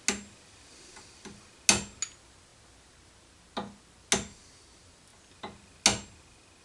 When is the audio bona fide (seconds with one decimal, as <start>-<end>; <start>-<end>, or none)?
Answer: 0.0-6.6